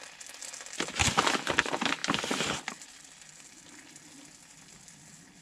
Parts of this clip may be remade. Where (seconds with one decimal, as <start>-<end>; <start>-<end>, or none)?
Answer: none